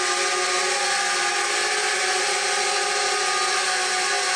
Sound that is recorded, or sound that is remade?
recorded